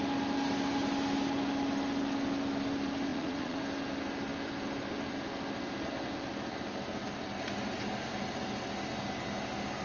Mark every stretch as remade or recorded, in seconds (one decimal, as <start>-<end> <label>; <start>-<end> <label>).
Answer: 0.0-3.1 recorded; 3.1-3.6 remade; 3.6-9.8 recorded